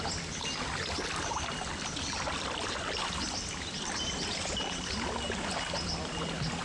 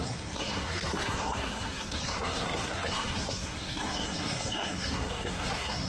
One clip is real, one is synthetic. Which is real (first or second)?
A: first